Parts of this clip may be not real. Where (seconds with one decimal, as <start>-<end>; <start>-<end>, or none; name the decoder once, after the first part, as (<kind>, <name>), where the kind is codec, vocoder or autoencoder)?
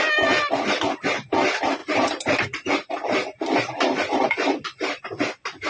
1.8-5.0 (vocoder, BigVGAN v2)